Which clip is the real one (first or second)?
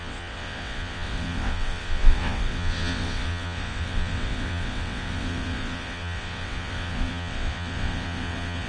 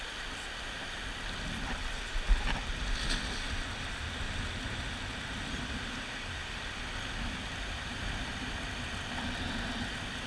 second